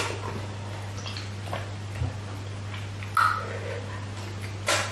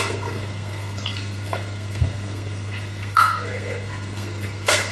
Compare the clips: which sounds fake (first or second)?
second